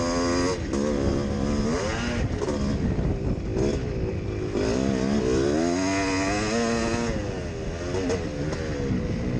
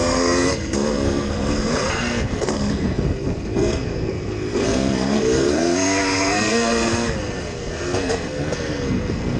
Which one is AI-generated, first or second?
second